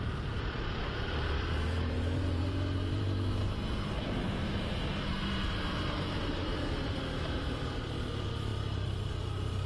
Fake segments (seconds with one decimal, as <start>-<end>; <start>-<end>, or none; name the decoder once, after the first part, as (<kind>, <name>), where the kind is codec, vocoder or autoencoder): 0.0-8.5 (vocoder, BigVGAN v2); 9.2-9.7